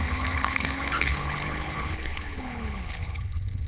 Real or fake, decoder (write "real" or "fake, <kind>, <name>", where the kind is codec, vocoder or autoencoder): fake, codec, HILCodec